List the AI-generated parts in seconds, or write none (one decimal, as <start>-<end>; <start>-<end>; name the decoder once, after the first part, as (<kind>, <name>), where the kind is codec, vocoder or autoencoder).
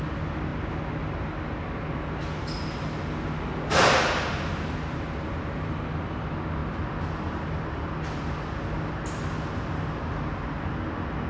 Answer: none